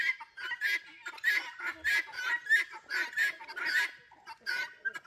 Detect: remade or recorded recorded